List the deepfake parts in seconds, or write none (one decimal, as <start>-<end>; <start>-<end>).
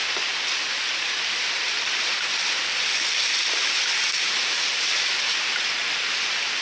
0.0-3.3; 4.7-5.4